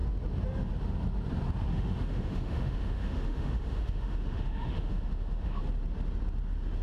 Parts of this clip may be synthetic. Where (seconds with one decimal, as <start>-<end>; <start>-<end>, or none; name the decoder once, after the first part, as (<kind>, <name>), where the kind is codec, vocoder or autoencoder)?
1.7-5.6 (autoencoder, DAC-VAE)